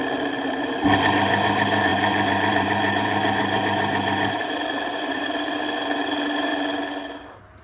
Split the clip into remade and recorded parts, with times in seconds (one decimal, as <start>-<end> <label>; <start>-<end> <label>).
0.0-6.5 remade; 6.5-7.6 recorded